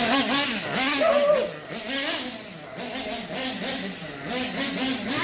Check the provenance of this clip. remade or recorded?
recorded